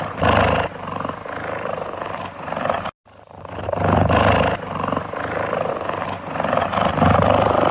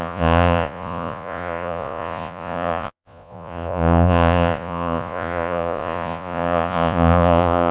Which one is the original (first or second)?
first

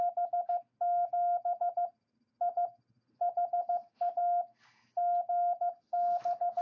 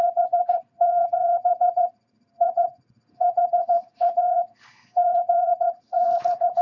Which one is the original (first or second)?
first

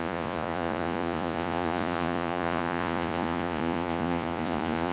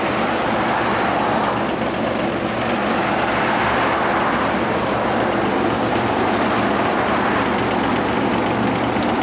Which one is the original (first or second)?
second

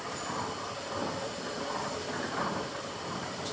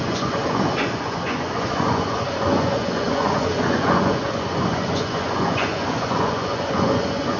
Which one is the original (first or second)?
first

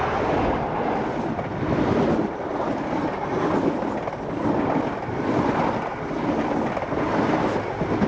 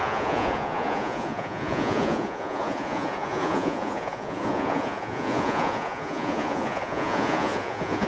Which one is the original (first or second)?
first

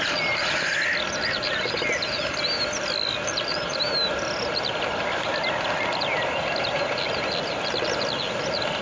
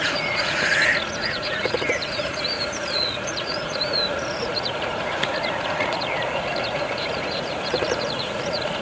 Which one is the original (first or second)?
first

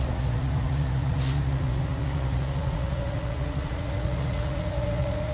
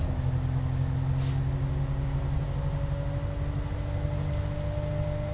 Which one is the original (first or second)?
second